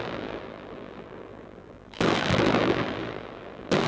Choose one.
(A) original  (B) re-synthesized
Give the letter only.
B